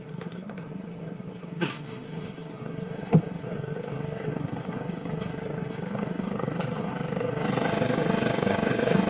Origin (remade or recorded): remade